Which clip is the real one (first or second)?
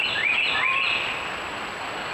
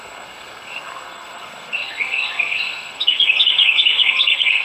first